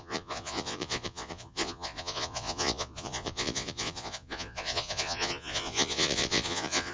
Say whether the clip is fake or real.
fake